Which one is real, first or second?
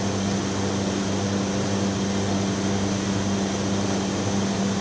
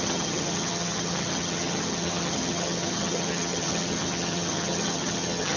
first